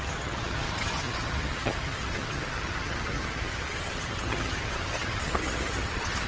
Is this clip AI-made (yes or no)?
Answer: yes